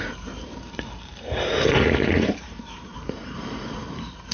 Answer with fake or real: fake